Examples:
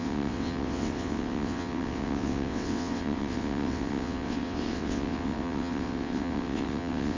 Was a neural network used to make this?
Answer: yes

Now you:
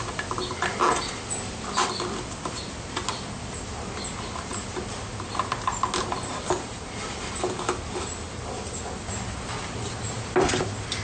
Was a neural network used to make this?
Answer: no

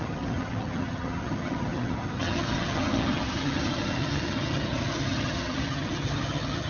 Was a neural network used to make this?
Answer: yes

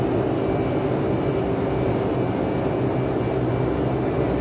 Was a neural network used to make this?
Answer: no